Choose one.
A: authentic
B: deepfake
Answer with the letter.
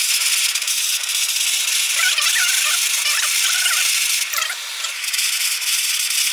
A